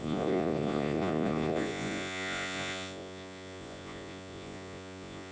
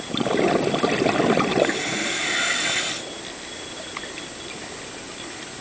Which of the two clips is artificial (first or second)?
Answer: first